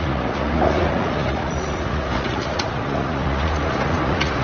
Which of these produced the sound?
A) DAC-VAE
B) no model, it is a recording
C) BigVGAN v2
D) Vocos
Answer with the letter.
D